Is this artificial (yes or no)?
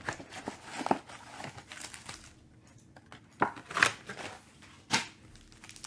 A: no